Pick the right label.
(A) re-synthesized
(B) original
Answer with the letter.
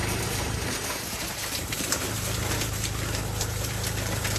A